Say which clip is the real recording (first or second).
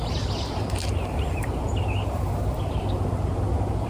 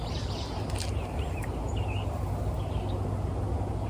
second